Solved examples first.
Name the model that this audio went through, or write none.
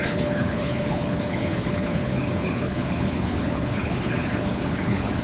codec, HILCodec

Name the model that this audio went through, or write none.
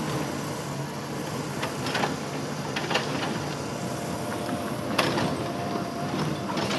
none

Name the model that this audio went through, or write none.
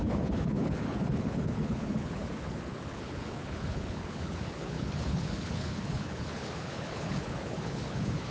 codec, HILCodec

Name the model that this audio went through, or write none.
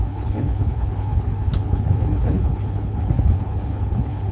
codec, HILCodec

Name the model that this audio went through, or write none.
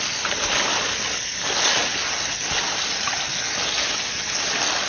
none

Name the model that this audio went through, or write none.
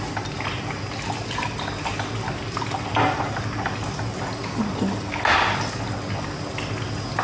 none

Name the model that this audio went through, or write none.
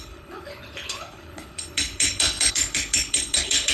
codec, HILCodec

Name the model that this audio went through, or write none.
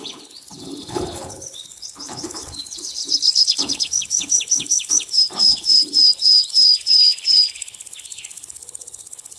codec, HILCodec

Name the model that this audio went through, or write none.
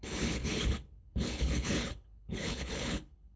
codec, HILCodec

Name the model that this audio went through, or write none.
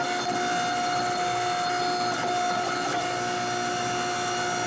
none